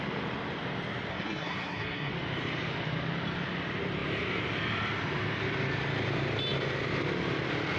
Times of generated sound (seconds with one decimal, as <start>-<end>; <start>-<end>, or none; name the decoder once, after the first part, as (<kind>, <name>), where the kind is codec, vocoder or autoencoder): 1.1-2.1 (codec, SNAC)